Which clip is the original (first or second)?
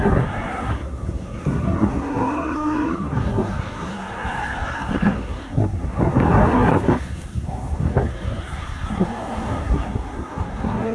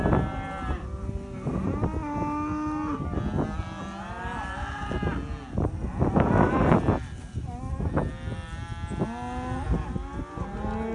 second